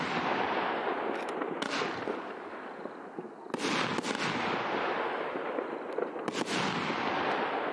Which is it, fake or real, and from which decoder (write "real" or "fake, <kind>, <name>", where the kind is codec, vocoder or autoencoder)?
real